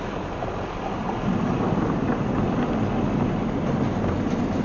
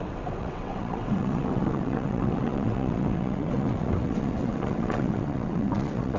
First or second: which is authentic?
first